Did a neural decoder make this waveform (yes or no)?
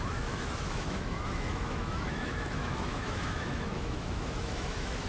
yes